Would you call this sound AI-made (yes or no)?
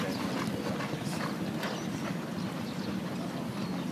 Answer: no